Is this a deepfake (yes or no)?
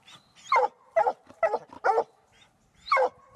no